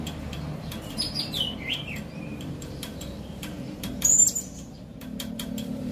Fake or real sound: fake